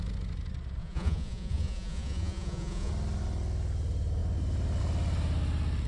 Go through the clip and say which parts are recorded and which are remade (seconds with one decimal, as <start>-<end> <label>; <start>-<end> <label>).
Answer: 0.0-0.8 recorded; 0.8-2.9 remade; 2.9-5.9 recorded